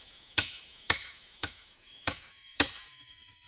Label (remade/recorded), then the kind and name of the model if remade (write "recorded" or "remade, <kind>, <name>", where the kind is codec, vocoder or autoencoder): remade, autoencoder, DAC-VAE